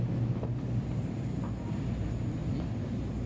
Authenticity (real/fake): real